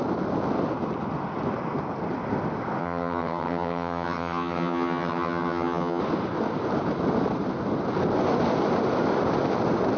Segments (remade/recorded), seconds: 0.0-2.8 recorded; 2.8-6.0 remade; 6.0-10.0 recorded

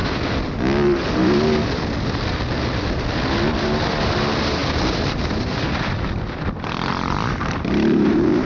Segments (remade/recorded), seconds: 0.0-3.6 recorded; 3.6-8.5 remade

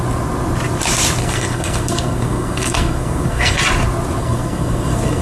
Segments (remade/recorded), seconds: 0.0-1.2 recorded; 1.2-3.6 remade; 3.6-4.2 recorded; 4.2-5.2 remade

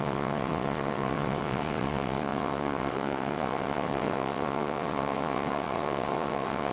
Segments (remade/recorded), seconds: 0.0-6.7 remade